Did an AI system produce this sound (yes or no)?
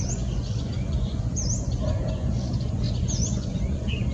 yes